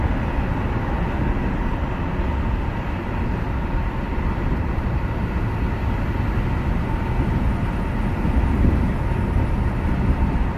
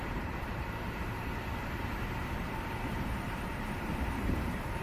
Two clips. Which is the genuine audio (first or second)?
first